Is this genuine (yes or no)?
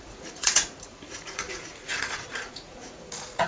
no